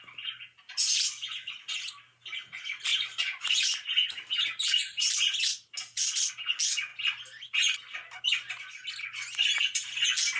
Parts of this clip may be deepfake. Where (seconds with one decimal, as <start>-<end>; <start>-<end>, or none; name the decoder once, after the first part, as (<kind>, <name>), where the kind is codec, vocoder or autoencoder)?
2.9-6.3 (vocoder, BigVGAN v2)